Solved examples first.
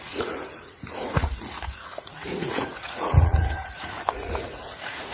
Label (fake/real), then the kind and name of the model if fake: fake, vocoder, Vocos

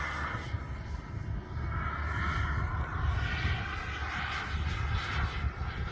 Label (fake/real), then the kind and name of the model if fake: real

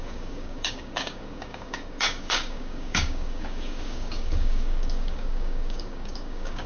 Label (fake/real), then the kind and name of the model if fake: fake, codec, DAC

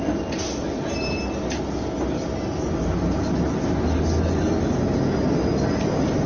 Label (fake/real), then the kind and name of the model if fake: real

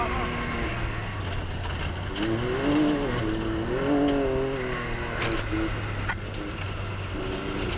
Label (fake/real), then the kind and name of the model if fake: real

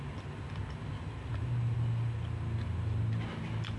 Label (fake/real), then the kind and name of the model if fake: real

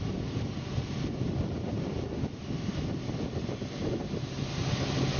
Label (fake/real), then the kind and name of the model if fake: fake, vocoder, BigVGAN v2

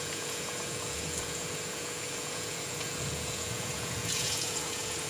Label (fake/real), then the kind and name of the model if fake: fake, vocoder, Vocos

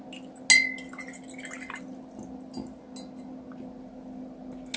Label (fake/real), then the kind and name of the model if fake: real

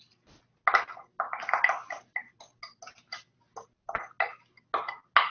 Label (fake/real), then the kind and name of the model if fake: real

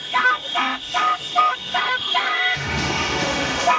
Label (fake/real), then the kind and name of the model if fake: fake, autoencoder, DAC-VAE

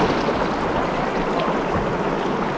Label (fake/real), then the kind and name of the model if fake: real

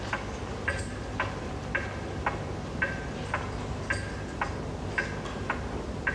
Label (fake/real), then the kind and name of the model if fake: real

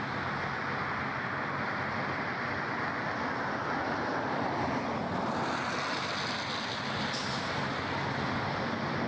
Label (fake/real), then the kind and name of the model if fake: real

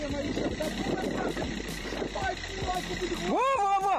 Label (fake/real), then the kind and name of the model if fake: real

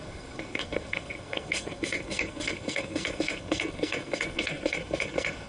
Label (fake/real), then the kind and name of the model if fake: fake, codec, SNAC